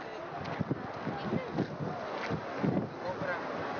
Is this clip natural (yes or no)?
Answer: yes